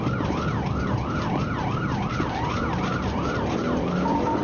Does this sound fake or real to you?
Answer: real